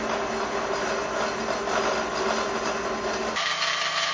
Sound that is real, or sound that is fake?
real